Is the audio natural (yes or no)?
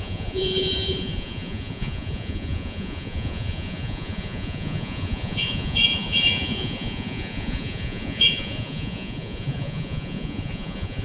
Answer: no